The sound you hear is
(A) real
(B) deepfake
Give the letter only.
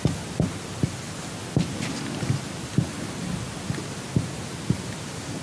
A